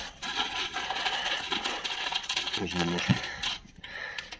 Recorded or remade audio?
remade